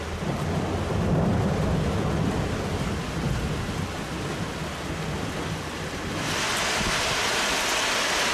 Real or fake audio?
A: real